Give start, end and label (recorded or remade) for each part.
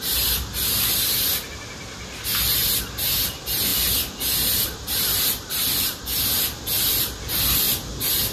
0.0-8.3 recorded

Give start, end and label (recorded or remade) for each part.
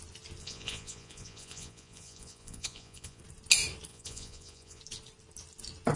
0.0-0.4 recorded; 0.4-3.2 remade; 3.2-3.9 recorded; 3.9-4.8 remade; 4.8-6.0 recorded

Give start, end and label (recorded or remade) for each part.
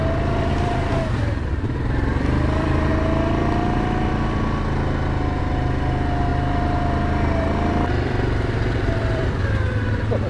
0.0-2.9 remade; 2.9-5.4 recorded; 5.4-10.3 remade